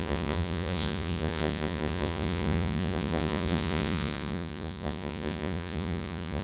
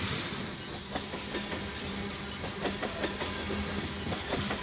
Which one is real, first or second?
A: second